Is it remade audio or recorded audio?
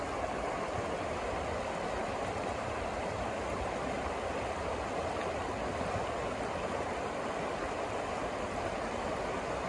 recorded